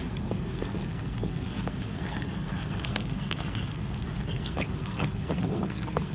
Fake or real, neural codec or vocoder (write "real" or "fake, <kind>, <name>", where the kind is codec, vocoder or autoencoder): fake, codec, SNAC